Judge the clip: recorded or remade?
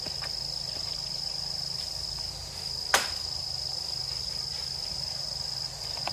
recorded